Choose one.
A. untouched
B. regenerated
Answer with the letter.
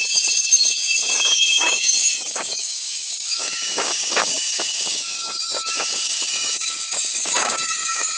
B